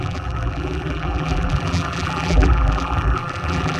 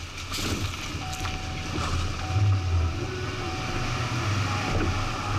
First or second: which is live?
second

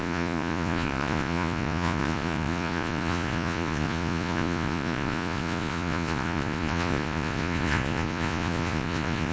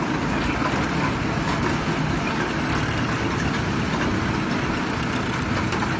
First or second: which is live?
second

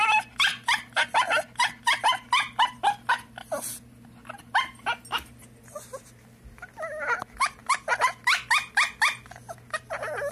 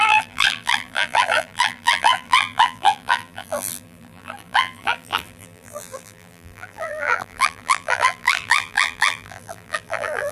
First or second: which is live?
first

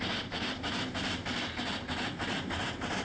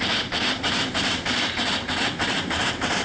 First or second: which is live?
first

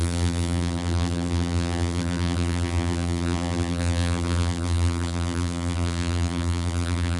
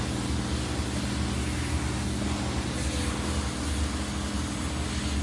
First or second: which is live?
second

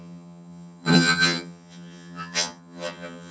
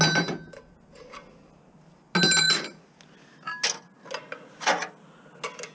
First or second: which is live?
second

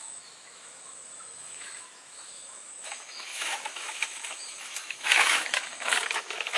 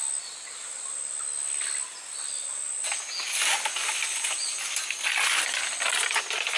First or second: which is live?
second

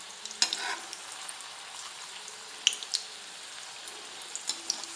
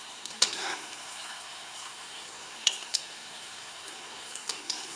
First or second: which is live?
first